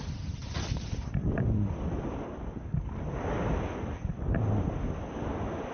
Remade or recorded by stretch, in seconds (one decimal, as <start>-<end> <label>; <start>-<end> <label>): 0.0-0.4 recorded; 0.4-2.1 remade; 2.1-5.7 recorded